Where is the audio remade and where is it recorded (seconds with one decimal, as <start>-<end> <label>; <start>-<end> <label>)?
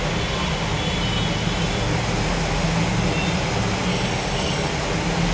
0.0-3.9 recorded; 3.9-4.7 remade; 4.7-5.3 recorded